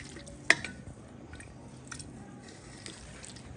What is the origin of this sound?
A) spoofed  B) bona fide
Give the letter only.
B